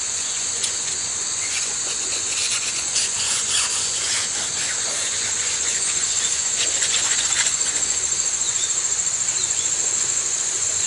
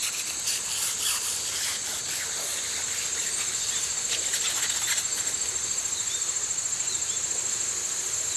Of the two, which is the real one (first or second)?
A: second